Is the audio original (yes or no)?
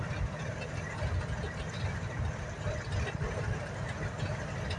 yes